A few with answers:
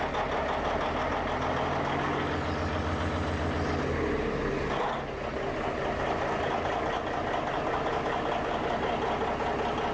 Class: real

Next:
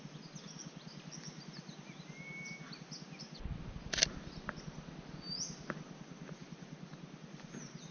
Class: real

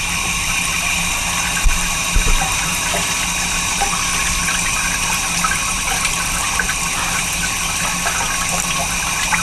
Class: real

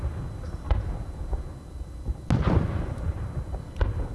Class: real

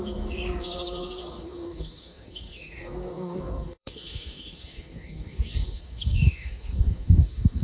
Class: fake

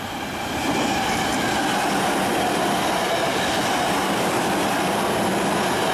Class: real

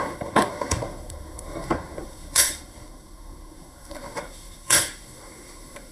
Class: fake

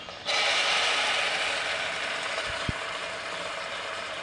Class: real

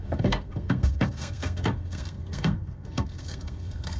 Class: fake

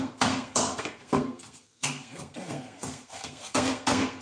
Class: fake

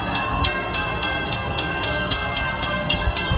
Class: fake